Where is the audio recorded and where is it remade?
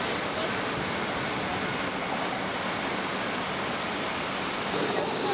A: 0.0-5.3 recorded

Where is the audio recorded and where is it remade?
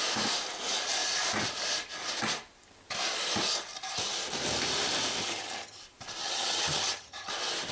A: 0.0-5.2 recorded; 5.2-5.8 remade; 5.8-6.2 recorded; 6.2-7.3 remade; 7.3-7.7 recorded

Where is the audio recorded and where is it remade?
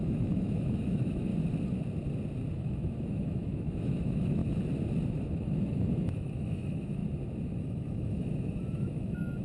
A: 0.0-1.3 remade; 1.3-2.5 recorded; 2.5-4.4 remade; 4.4-5.1 recorded; 5.1-7.0 remade; 7.0-7.6 recorded; 7.6-9.4 remade